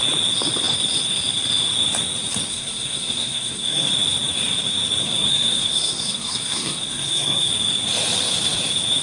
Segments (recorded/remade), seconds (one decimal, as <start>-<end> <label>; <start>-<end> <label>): 0.0-2.5 recorded; 2.5-3.9 remade; 3.9-5.0 recorded; 5.0-7.5 remade; 7.5-9.0 recorded

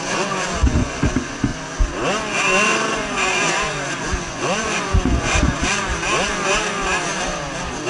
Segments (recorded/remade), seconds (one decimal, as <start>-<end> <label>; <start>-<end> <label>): 0.0-1.5 remade; 1.5-2.9 recorded; 2.9-5.9 remade; 5.9-7.9 recorded

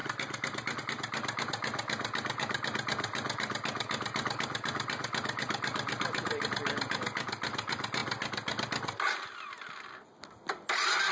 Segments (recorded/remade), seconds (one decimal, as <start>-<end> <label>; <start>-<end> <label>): 0.0-11.1 recorded

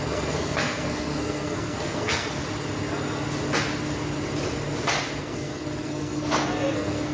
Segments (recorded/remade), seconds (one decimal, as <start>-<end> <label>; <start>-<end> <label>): 0.0-2.4 remade; 2.4-5.2 recorded; 5.2-7.1 remade